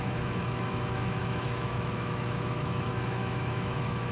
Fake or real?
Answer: fake